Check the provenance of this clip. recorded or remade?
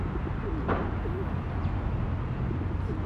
recorded